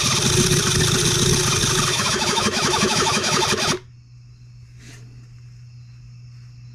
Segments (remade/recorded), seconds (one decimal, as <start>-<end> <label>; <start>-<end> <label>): 0.0-1.9 recorded; 1.9-3.4 remade; 3.4-6.7 recorded